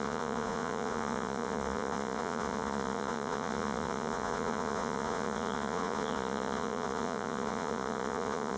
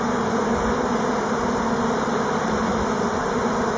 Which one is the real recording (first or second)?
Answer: second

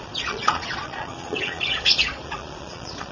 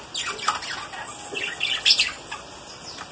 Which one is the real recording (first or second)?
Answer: second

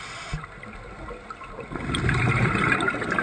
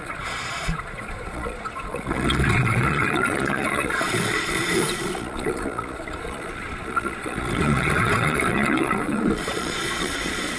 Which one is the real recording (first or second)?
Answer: first